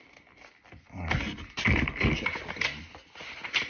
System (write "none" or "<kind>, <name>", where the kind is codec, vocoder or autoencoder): none